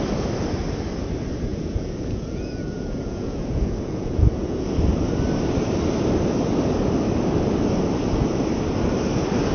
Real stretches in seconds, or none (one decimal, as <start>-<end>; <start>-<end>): 0.0-1.5; 4.7-9.5